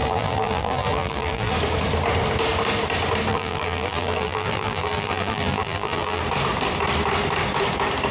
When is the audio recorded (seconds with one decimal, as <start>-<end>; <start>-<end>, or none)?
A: 1.5-3.3; 6.2-8.1